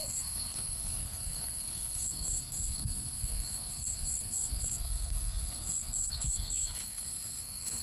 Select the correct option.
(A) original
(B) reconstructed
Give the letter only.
B